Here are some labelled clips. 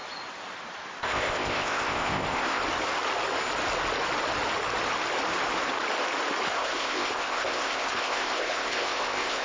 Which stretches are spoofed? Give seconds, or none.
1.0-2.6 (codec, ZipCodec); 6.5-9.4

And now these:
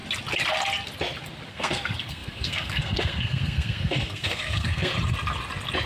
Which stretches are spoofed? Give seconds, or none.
1.5-4.9 (codec, SNAC)

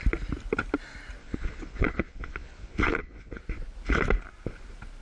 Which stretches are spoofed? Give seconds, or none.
1.2-3.4 (vocoder, Vocos)

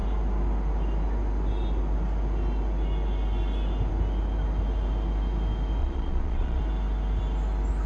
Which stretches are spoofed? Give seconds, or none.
5.8-6.6 (vocoder, Vocos)

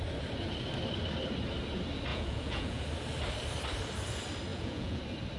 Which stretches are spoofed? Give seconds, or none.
2.1-2.8 (vocoder, Vocos); 4.5-5.0

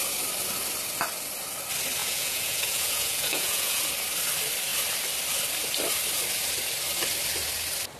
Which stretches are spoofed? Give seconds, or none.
2.0-3.8 (vocoder, Vocos)

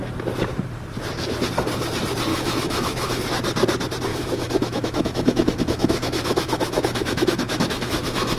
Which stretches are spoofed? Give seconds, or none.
2.3-3.2 (autoencoder, DAC-VAE); 4.1-8.4